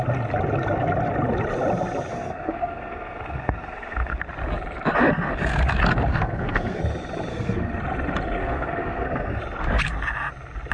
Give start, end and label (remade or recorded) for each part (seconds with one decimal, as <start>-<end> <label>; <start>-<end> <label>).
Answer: 0.0-2.1 recorded; 2.1-4.2 remade; 4.2-6.1 recorded; 6.1-6.8 remade; 6.8-7.3 recorded; 7.3-7.8 remade; 7.8-8.4 recorded; 8.4-9.4 remade; 9.4-10.7 recorded